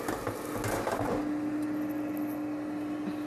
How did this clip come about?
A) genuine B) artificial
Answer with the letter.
A